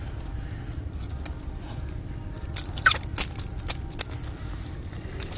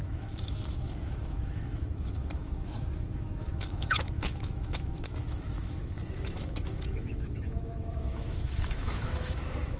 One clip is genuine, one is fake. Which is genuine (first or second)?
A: first